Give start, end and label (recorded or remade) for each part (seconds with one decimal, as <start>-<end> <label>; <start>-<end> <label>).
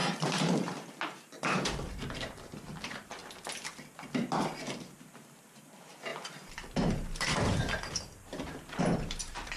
0.0-3.2 remade; 3.2-4.7 recorded; 4.7-9.6 remade